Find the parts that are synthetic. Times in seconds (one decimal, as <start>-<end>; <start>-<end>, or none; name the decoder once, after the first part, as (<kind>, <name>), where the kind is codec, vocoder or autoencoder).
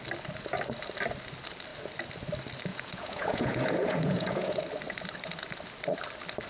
2.7-4.6 (vocoder, Vocos)